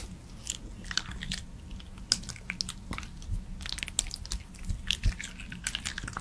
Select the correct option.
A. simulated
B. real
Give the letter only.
B